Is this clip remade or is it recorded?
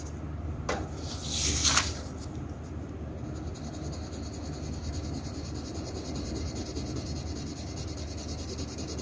recorded